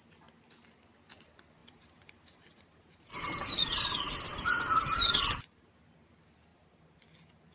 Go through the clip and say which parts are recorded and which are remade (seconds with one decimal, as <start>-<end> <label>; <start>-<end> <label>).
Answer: 0.0-1.6 recorded; 1.6-5.8 remade; 5.8-6.5 recorded; 6.5-7.0 remade; 7.0-7.5 recorded